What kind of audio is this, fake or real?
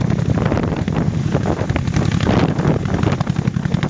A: real